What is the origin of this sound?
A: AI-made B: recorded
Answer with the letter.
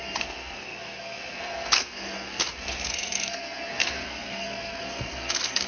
A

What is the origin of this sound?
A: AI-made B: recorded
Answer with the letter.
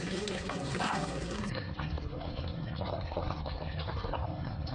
A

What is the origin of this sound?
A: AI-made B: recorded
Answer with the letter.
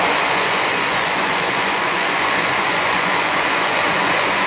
A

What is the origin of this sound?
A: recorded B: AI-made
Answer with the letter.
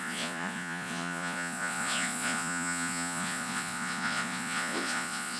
B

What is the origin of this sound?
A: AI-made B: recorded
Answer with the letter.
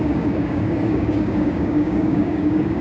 A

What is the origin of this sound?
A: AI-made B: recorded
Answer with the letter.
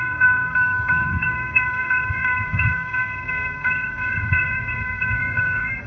A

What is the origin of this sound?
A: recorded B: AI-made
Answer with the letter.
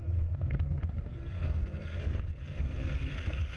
B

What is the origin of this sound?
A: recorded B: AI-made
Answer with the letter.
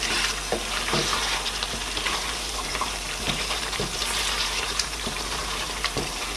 B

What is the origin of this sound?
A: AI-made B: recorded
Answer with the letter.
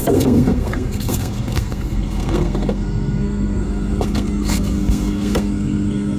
A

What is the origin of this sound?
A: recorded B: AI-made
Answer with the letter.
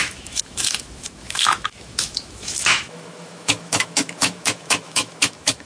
B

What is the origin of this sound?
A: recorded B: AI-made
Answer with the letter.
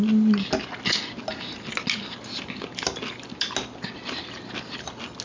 A